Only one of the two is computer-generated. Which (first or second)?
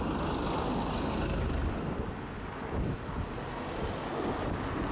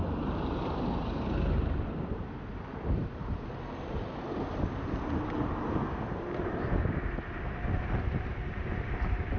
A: second